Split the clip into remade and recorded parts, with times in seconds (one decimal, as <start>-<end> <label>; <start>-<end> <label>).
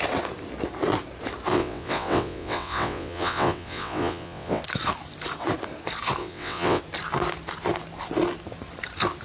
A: 0.0-1.5 recorded; 1.5-4.6 remade; 4.6-6.2 recorded; 6.2-6.8 remade; 6.8-9.2 recorded